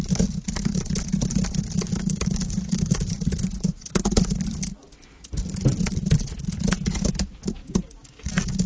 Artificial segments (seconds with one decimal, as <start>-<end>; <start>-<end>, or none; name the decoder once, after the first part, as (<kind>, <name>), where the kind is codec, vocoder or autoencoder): 1.9-3.0 (codec, DAC); 7.6-8.7